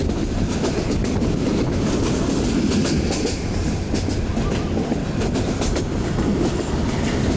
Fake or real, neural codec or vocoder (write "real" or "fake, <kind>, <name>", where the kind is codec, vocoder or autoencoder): real